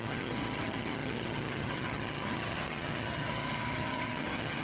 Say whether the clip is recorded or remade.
remade